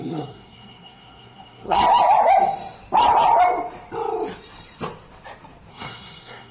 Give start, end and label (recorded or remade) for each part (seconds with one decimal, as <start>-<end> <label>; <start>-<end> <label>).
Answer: 0.0-1.8 remade; 1.8-5.7 recorded; 5.7-6.5 remade